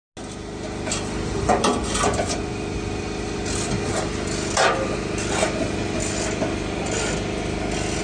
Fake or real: real